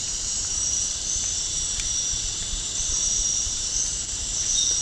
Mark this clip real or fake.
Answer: fake